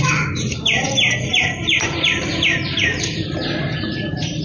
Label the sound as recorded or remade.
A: remade